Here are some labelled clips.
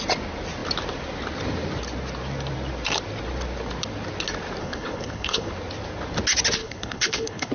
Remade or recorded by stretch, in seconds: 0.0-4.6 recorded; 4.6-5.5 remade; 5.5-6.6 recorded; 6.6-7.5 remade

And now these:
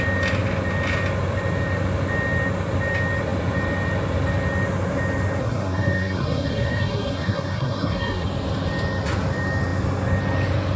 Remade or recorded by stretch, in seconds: 0.0-5.4 recorded; 5.4-8.3 remade; 8.3-10.8 recorded

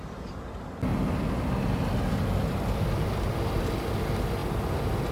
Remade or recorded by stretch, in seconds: 0.0-5.1 recorded

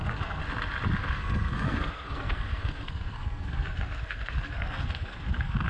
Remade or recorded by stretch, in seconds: 0.0-0.4 remade; 0.4-1.0 recorded; 1.0-5.7 remade

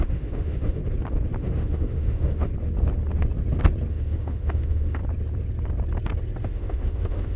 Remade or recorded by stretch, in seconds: 0.0-0.8 remade; 0.8-1.4 recorded; 1.4-2.5 remade; 2.5-3.9 recorded; 3.9-5.0 remade; 5.0-6.4 recorded; 6.4-7.4 remade

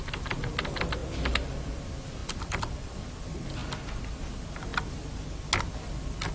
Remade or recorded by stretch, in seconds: 0.0-6.3 recorded